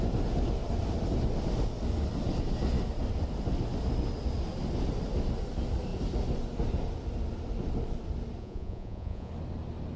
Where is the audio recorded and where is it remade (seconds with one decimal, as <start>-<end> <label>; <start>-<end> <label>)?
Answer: 0.0-8.4 recorded; 8.4-9.3 remade; 9.3-10.0 recorded